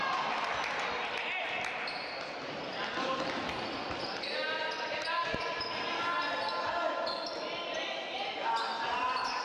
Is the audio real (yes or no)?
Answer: yes